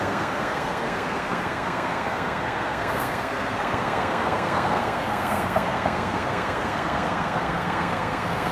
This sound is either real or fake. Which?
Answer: fake